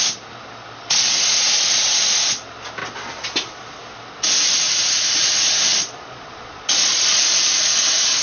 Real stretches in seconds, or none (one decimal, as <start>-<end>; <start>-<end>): 0.0-5.7; 7.2-8.2